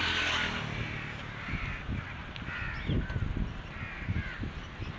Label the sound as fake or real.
real